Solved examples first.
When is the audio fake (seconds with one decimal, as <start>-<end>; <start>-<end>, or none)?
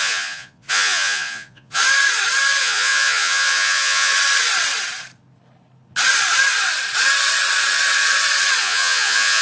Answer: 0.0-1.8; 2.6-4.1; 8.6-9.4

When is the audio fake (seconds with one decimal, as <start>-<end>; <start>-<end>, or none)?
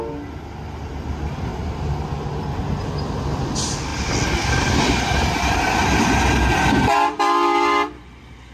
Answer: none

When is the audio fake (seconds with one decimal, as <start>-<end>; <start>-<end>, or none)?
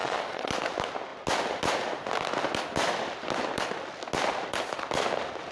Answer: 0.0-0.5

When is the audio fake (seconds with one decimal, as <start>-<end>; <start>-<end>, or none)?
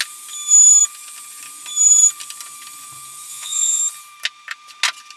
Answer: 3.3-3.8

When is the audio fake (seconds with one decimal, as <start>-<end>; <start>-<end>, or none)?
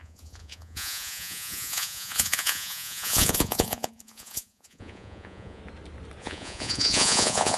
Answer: 0.0-5.6; 6.2-7.6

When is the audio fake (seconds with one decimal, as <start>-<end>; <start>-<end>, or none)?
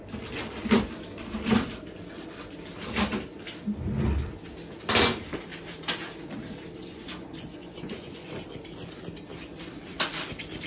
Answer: 6.8-8.3